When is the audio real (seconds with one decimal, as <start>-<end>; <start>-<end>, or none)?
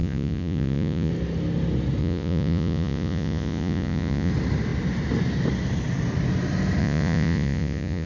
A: 1.1-2.0; 4.3-6.8